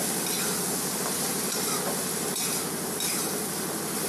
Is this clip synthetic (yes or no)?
no